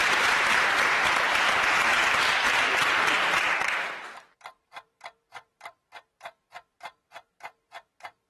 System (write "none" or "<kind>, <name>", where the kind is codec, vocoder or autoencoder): vocoder, BigVGAN v2